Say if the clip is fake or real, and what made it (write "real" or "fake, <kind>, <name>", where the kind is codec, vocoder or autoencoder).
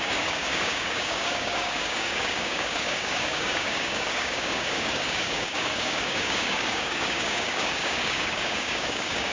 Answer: fake, codec, DAC